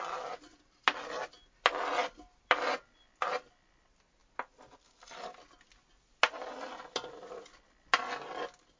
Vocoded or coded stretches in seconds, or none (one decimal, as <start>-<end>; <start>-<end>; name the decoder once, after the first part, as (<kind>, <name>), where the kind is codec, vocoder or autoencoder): none

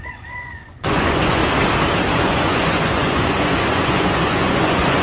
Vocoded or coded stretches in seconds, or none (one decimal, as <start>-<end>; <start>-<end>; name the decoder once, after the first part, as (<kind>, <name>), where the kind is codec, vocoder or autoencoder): 0.0-1.4 (vocoder, Vocos); 2.1-5.0

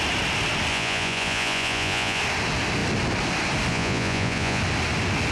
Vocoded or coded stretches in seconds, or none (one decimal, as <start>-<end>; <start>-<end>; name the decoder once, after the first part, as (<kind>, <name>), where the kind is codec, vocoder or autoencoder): 0.7-2.2 (vocoder, Vocos); 3.7-4.6

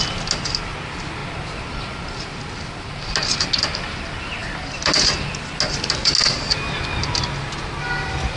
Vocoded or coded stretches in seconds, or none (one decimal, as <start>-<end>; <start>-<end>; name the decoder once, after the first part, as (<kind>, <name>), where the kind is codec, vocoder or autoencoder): none